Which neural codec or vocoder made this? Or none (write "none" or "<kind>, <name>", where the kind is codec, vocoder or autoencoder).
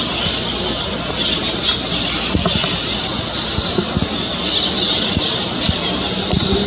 none